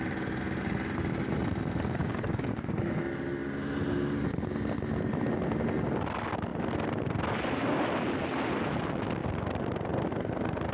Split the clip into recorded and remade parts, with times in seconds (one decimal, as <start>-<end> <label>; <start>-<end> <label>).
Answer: 0.0-2.0 recorded; 2.0-3.0 remade; 3.0-10.7 recorded